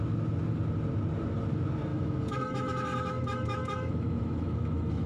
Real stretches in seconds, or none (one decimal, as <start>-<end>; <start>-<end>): 0.0-1.9